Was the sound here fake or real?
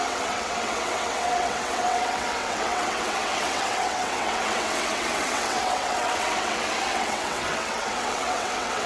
fake